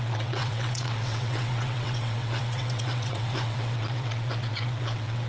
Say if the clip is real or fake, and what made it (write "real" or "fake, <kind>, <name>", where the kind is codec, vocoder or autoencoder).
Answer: fake, vocoder, WaveNeXt